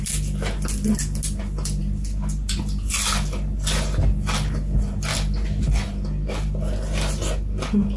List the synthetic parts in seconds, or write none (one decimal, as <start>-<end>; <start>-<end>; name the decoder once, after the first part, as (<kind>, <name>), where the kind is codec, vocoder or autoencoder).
none